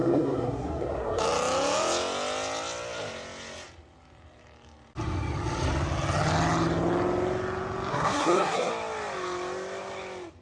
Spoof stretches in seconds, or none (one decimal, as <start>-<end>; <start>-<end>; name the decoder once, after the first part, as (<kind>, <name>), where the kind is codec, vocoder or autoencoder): 0.0-1.2 (codec, SNAC); 7.9-8.7